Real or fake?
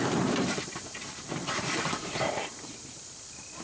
fake